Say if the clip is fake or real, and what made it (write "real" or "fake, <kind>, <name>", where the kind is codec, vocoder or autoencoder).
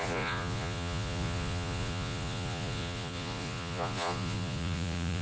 fake, vocoder, Vocos